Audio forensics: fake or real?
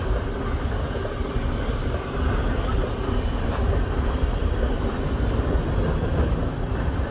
real